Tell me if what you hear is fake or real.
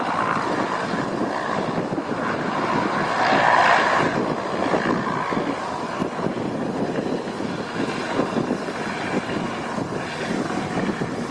real